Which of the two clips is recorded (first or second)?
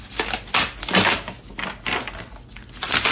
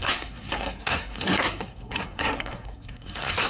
first